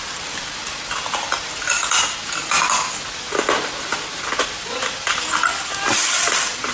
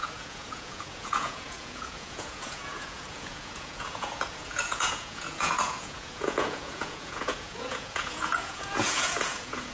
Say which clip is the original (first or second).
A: first